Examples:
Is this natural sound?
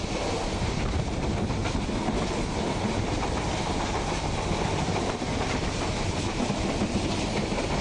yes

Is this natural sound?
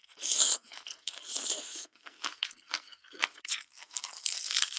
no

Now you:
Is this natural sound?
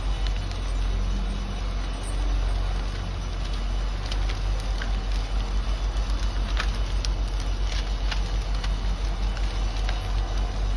yes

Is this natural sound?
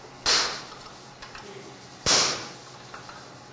yes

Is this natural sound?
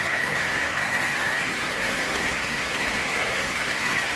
no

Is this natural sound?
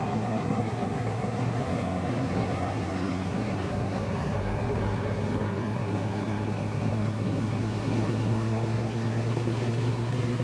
no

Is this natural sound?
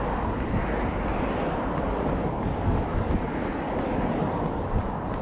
yes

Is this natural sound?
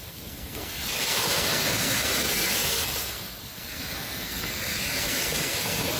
no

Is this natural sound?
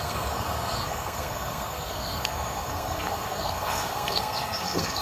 no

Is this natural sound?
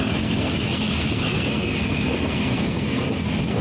no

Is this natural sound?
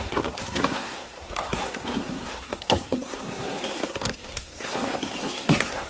no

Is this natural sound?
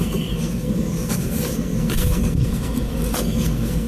no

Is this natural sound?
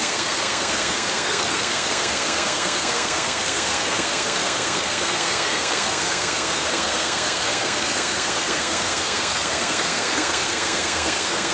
no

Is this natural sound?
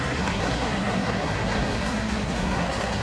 no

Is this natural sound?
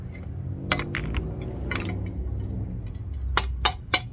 yes